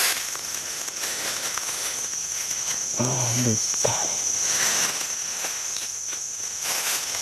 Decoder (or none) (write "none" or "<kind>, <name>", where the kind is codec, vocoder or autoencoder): autoencoder, DAC-VAE